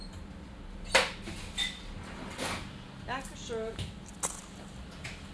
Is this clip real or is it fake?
real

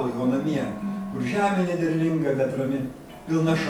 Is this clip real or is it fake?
fake